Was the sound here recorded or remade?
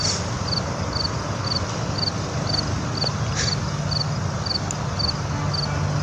recorded